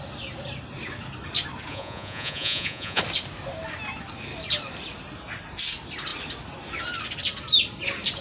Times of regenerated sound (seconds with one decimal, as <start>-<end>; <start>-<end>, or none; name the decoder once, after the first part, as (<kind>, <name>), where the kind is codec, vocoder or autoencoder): 1.7-3.0 (vocoder, Vocos)